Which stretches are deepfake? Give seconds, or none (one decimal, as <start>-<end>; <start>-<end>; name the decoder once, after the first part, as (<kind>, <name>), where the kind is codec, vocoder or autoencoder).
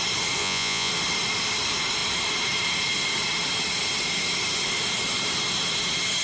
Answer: 0.4-0.9 (vocoder, Vocos)